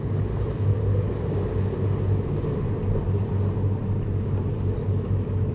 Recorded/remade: recorded